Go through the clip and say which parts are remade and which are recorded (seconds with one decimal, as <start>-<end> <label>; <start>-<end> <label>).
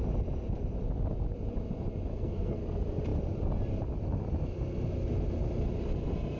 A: 0.0-2.1 recorded; 2.1-2.6 remade; 2.6-6.4 recorded